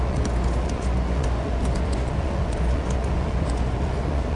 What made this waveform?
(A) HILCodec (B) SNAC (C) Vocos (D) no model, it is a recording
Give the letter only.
C